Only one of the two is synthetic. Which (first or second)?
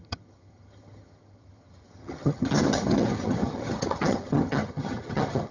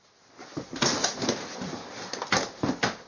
first